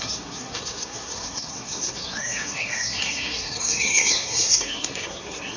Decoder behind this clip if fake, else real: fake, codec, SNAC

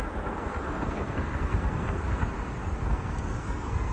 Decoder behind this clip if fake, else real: fake, codec, SNAC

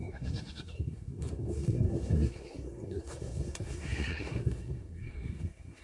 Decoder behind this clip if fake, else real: fake, codec, SNAC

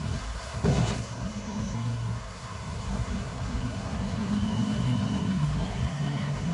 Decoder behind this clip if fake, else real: fake, codec, SNAC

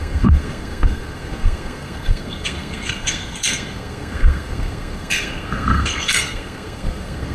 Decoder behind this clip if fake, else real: fake, codec, SNAC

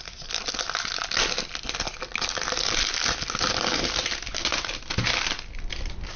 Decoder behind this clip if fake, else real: real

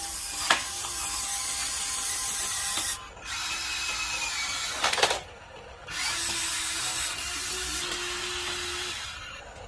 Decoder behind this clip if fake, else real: real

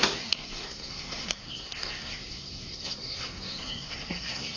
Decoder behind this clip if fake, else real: fake, codec, SNAC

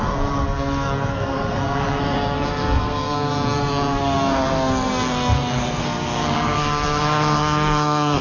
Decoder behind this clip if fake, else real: fake, codec, SNAC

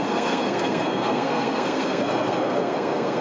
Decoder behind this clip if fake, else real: fake, codec, SNAC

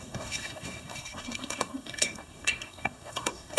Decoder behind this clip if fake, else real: fake, codec, SNAC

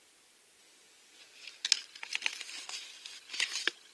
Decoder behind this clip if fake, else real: real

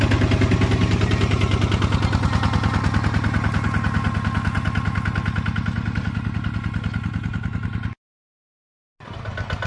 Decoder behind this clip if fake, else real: real